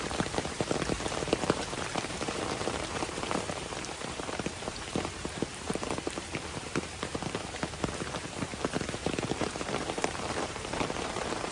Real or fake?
fake